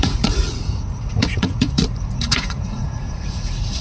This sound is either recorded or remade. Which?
remade